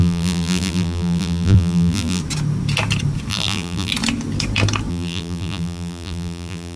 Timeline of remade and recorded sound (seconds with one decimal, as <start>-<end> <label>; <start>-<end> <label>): 0.0-2.2 remade; 2.2-3.3 recorded; 3.3-3.9 remade; 3.9-4.9 recorded; 4.9-6.8 remade